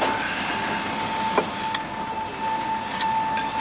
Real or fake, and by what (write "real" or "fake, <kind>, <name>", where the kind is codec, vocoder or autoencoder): real